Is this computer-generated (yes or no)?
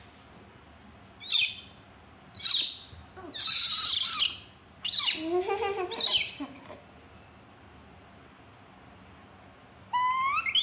no